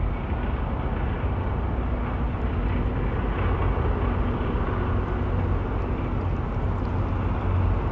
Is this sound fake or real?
real